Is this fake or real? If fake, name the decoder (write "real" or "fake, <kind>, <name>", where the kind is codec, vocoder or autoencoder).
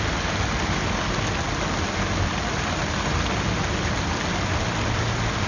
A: real